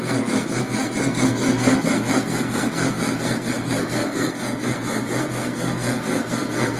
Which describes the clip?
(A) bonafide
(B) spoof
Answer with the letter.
B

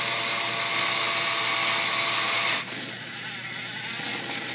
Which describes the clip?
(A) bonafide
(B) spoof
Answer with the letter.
A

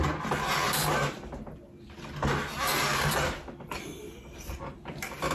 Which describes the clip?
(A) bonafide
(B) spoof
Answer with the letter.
A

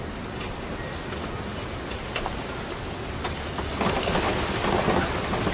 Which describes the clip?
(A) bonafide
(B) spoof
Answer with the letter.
A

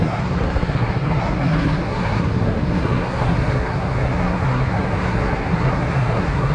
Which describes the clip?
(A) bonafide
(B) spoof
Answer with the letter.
B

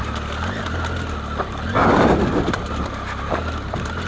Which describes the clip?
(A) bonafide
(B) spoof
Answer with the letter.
A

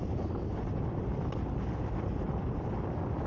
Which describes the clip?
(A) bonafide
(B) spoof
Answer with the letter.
A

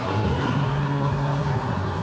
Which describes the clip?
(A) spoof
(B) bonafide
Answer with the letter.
A